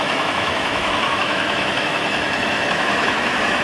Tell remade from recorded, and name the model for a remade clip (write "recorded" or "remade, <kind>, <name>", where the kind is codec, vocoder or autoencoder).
remade, autoencoder, DAC-VAE